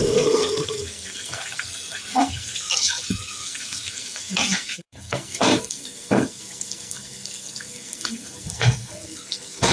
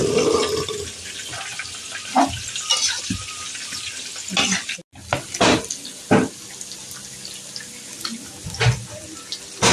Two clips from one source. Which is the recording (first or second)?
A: second